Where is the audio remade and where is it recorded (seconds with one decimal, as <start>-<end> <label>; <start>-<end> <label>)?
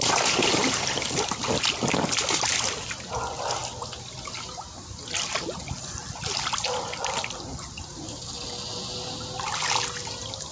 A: 0.0-10.5 recorded